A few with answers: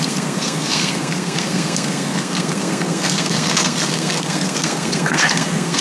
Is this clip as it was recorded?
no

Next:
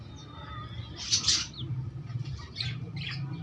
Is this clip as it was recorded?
yes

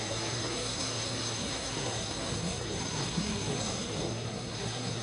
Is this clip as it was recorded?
no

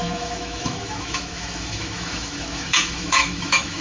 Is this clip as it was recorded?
no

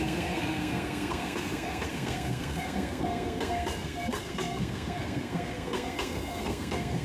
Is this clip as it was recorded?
no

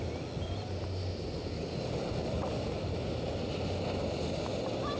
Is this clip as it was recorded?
yes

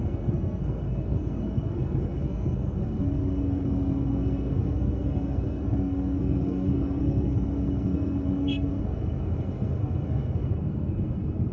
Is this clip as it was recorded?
no